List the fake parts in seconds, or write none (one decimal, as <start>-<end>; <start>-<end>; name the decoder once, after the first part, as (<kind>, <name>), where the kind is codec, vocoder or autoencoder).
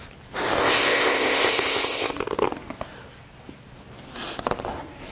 0.6-2.1 (codec, ZipCodec)